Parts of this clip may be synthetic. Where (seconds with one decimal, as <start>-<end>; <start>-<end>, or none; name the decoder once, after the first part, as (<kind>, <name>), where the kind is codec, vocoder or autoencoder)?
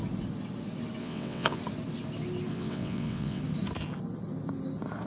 1.0-1.6 (vocoder, WaveNeXt); 2.5-3.4